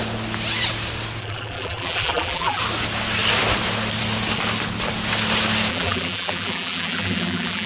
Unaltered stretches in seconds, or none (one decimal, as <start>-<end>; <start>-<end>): 0.0-1.2; 2.6-5.7